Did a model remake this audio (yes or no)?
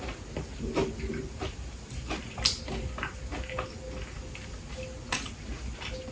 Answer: no